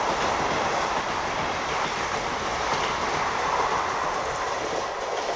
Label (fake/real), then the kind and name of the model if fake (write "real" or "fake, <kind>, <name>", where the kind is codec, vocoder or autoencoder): real